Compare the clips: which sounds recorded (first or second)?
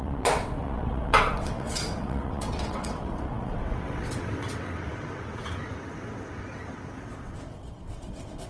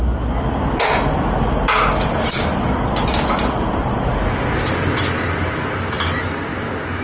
second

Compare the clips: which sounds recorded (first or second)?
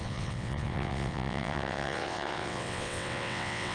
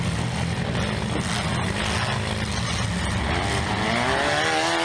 second